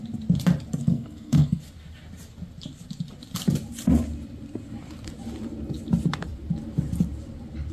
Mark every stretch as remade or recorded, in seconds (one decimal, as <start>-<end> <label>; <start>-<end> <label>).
0.0-0.8 recorded; 0.8-1.6 remade; 1.6-7.7 recorded